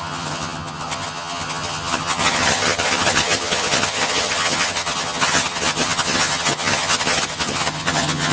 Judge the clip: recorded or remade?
remade